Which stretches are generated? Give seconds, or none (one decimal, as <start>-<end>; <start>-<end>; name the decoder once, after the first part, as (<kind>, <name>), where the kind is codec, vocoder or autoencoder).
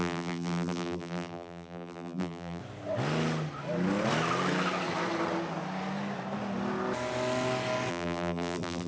0.0-2.6 (vocoder, BigVGAN v2); 7.9-8.9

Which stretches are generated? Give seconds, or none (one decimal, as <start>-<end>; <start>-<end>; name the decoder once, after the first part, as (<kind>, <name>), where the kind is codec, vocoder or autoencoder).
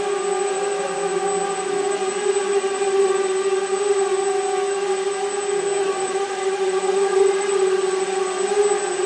2.5-3.1 (vocoder, Vocos); 5.8-8.3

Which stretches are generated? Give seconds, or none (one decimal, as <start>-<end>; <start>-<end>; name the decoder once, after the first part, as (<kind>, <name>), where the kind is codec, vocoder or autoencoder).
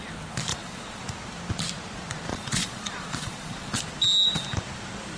0.5-1.0 (vocoder, Vocos); 2.3-3.8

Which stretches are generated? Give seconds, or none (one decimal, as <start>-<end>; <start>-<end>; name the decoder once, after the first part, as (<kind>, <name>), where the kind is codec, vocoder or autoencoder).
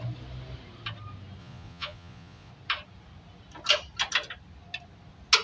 1.4-2.5 (vocoder, Vocos)